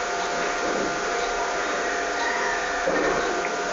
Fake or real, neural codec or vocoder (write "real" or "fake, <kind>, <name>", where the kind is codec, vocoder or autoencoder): fake, vocoder, BigVGAN v2